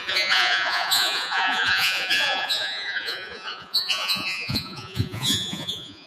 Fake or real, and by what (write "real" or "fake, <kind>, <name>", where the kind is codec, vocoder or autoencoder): fake, vocoder, Vocos